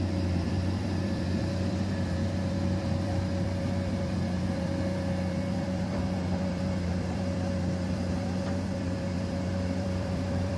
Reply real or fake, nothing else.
fake